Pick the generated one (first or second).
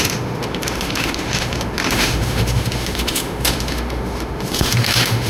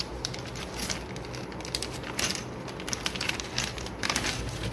first